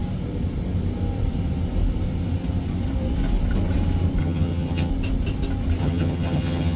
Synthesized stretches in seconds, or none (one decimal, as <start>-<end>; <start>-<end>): 4.2-4.9; 5.8-6.8